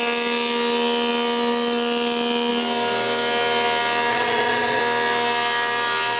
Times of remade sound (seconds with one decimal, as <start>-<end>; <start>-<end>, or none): 4.1-4.8